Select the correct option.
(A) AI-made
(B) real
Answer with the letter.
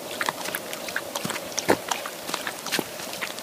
A